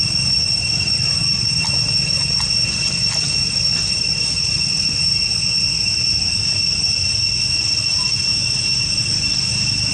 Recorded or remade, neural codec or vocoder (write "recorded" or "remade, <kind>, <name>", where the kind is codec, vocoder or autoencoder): recorded